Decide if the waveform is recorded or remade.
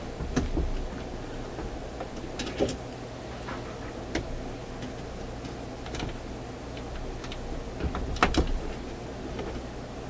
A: recorded